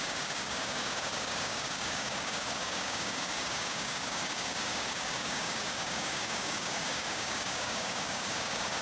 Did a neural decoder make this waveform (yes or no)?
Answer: yes